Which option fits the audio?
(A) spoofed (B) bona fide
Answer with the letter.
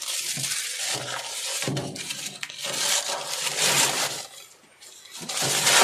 B